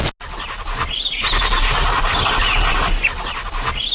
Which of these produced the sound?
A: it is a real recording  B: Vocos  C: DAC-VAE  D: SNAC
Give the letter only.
A